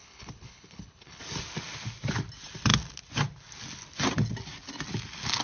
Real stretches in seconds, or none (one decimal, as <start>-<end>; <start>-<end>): 1.2-5.4